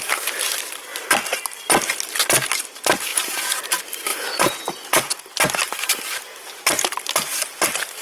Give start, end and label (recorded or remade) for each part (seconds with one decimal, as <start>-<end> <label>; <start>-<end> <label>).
0.0-3.1 recorded; 3.1-3.6 remade; 3.6-4.1 recorded; 4.1-5.2 remade; 5.2-8.0 recorded